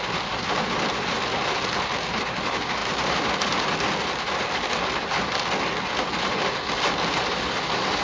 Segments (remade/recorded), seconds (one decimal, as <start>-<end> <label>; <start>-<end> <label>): 0.0-8.0 recorded